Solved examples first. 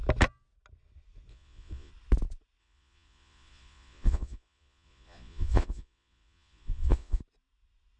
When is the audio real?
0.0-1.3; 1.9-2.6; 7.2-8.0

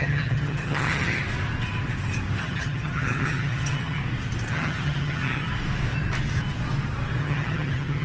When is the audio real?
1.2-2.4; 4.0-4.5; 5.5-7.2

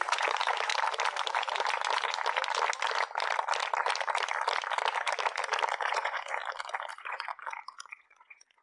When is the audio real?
0.7-5.7; 6.4-6.9

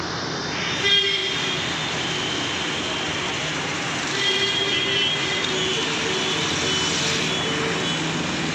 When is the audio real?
0.0-3.4; 4.3-8.5

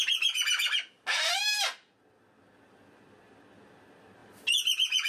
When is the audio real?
0.0-5.1

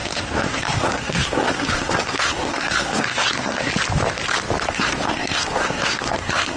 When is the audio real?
3.7-4.7

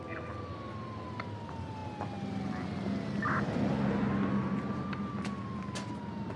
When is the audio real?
0.0-6.4